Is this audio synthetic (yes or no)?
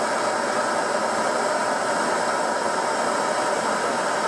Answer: no